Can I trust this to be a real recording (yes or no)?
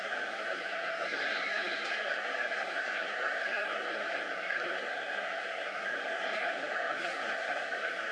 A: no